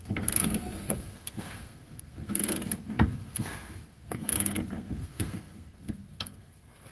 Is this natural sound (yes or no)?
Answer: no